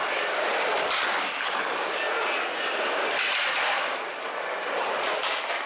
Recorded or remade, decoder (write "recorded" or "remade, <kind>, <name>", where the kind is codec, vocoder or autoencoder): recorded